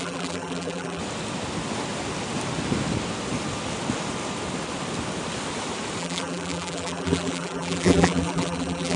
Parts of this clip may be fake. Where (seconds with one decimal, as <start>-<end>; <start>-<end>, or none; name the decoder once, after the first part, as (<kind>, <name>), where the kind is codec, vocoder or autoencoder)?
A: 0.0-1.0 (vocoder, BigVGAN v2); 6.0-9.0